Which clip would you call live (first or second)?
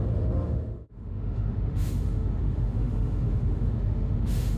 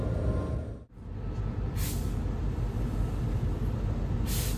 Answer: second